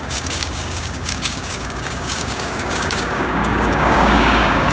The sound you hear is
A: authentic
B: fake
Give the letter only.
B